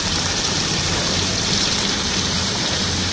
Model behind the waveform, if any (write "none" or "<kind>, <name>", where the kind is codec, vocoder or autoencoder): vocoder, BigVGAN v2